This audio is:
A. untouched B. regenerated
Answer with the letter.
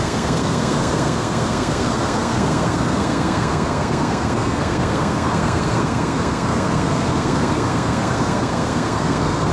B